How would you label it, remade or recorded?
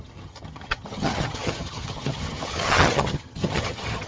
remade